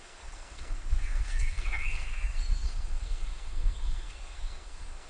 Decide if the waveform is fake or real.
fake